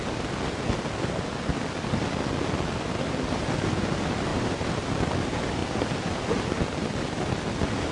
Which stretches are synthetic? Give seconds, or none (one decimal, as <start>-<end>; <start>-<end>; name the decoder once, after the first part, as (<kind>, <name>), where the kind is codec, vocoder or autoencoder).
4.3-4.9 (vocoder, BigVGAN v2)